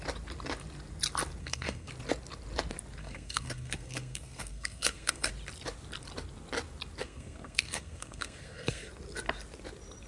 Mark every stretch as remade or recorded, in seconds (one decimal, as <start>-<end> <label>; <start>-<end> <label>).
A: 0.0-1.4 recorded; 1.4-1.9 remade; 1.9-3.0 recorded; 3.0-5.3 remade; 5.3-7.0 recorded; 7.0-8.9 remade; 8.9-10.1 recorded